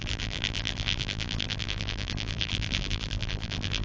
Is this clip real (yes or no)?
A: no